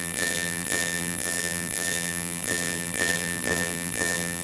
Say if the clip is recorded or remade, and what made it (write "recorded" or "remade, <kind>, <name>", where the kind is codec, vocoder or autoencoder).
remade, vocoder, BigVGAN v2